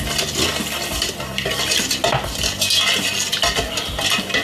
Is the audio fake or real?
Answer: real